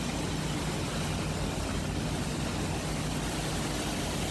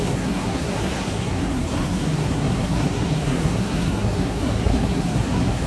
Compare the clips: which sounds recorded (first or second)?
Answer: first